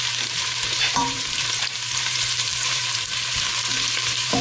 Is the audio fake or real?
fake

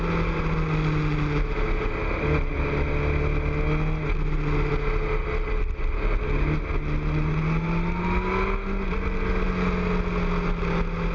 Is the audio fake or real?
real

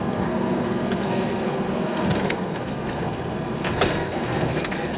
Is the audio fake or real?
fake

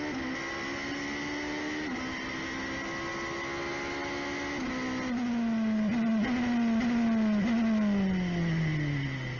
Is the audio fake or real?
real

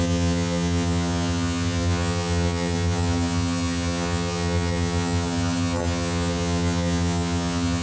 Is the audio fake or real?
fake